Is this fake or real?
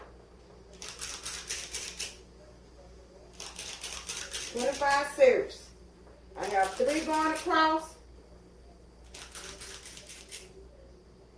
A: real